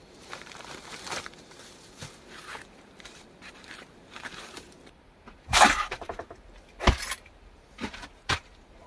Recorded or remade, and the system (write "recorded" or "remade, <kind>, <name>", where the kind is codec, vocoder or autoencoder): remade, vocoder, BigVGAN v2